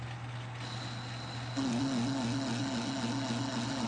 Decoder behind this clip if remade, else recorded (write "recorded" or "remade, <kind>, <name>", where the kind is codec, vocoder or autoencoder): recorded